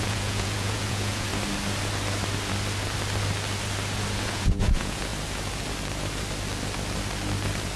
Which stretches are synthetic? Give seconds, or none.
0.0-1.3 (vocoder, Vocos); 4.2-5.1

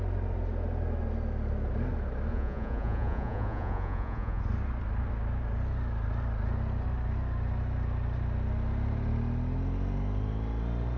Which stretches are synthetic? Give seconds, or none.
2.3-4.4 (vocoder, Vocos)